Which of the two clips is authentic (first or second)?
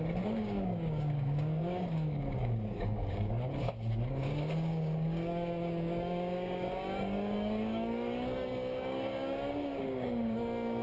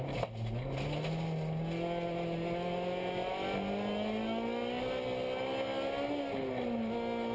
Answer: second